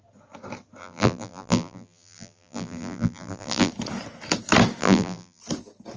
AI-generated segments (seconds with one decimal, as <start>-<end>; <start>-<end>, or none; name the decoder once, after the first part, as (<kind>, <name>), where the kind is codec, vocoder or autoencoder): 0.8-3.7 (vocoder, BigVGAN v2); 4.8-5.4